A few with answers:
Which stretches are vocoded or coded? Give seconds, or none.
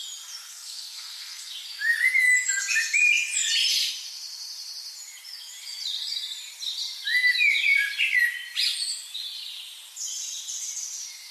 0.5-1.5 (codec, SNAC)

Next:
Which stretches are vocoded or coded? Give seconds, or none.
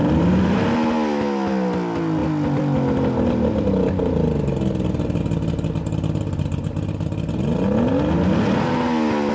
none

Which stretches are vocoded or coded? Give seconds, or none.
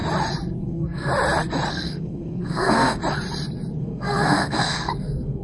0.6-1.1 (codec, SNAC); 1.7-3.0; 3.8-5.4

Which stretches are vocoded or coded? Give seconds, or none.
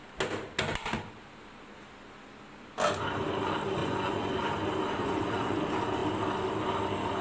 3.8-4.3 (vocoder, Vocos); 5.0-5.6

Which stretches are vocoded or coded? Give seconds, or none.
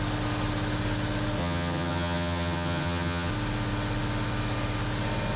1.4-3.3 (vocoder, HiFi-GAN)